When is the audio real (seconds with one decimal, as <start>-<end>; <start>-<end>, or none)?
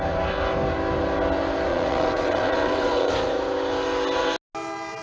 0.0-1.7; 3.1-5.0